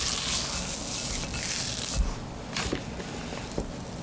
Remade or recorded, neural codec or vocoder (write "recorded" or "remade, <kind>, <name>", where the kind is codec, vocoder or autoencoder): recorded